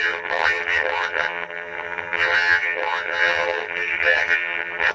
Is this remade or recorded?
remade